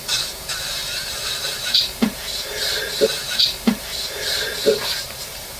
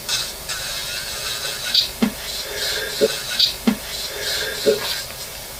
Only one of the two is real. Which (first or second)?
second